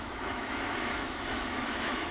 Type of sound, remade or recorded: remade